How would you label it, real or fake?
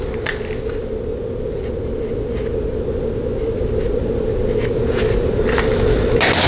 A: real